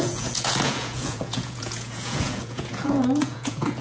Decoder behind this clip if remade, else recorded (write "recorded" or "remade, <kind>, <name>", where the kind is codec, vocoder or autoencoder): remade, vocoder, Vocos